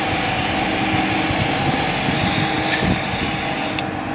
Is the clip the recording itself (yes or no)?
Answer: yes